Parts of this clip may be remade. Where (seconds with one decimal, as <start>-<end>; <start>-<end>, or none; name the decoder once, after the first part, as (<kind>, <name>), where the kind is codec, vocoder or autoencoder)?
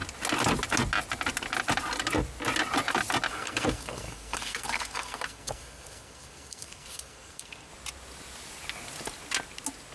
3.3-7.7 (codec, SNAC)